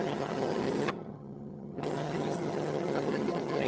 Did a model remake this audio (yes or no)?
yes